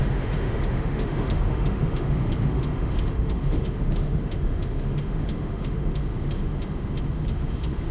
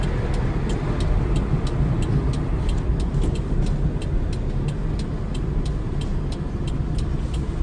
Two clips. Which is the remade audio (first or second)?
first